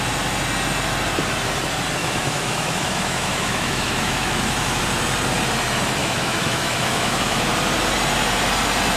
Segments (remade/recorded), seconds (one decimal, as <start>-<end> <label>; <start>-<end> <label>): 0.0-2.0 recorded; 2.0-4.8 remade; 4.8-6.0 recorded; 6.0-7.5 remade; 7.5-9.0 recorded